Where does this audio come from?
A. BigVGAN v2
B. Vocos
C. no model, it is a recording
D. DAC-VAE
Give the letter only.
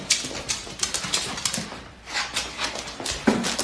C